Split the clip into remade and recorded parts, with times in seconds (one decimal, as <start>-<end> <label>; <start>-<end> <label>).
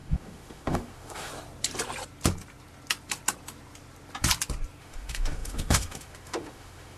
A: 0.0-1.3 remade; 1.3-4.8 recorded; 4.8-7.0 remade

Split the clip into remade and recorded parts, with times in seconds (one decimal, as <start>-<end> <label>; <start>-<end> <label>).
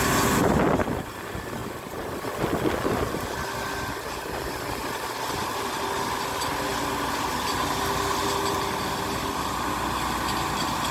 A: 0.0-10.9 recorded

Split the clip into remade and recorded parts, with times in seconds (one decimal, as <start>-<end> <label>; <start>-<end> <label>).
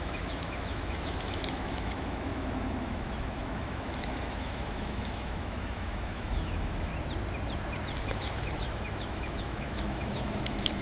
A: 0.0-6.9 remade; 6.9-8.0 recorded; 8.0-10.8 remade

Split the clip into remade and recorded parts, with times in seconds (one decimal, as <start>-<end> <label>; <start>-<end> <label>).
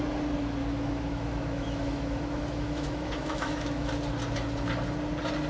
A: 0.0-0.6 recorded; 0.6-3.9 remade; 3.9-5.5 recorded